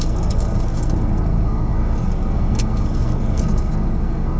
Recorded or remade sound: remade